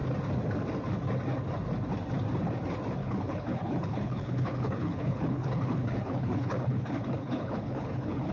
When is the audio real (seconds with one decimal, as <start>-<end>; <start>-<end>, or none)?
0.0-3.0